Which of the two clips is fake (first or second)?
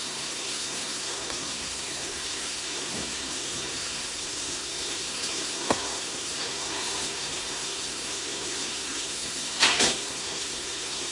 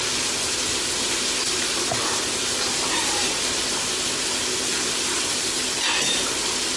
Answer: first